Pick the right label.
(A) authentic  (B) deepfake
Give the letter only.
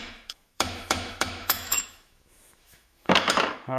B